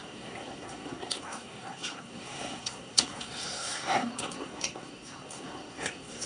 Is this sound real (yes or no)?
no